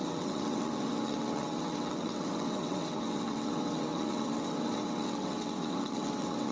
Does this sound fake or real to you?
fake